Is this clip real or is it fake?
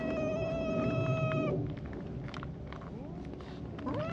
real